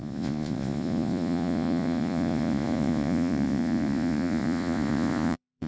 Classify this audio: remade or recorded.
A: remade